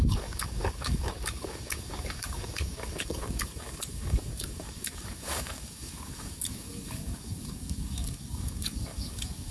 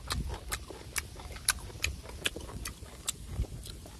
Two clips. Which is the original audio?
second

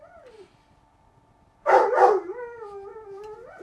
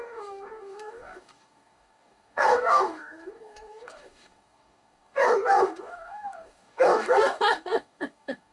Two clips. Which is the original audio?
first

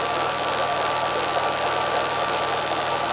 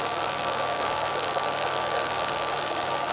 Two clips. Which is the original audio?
first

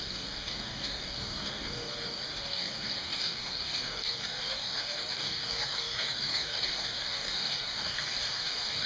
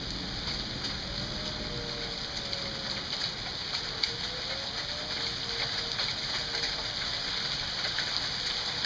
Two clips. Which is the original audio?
second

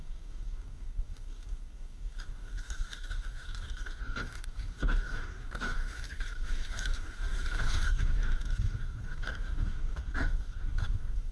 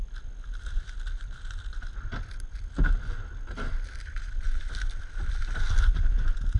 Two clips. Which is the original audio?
second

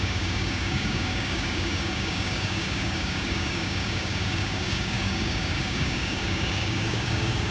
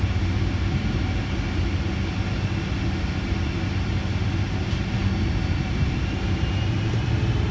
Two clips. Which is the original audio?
second